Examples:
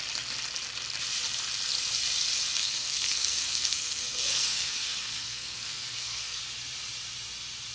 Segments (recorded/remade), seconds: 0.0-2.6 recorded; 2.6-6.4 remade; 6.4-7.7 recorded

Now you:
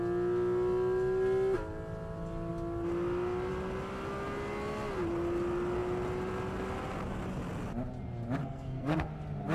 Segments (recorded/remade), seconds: 0.0-8.4 recorded; 8.4-9.1 remade; 9.1-9.5 recorded

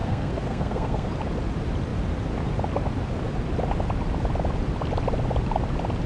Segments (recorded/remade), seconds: 0.0-1.1 remade; 1.1-6.1 recorded

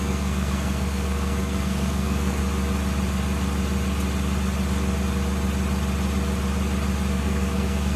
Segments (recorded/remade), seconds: 0.0-2.4 remade; 2.4-7.1 recorded; 7.1-8.0 remade

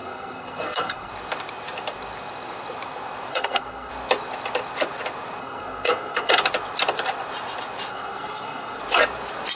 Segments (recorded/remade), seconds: 0.0-1.1 remade; 1.1-3.3 recorded; 3.3-3.9 remade; 3.9-5.4 recorded; 5.4-6.4 remade; 6.4-7.9 recorded; 7.9-8.8 remade; 8.8-9.6 recorded